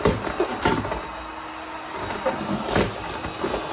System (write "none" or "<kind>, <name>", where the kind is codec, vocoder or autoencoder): none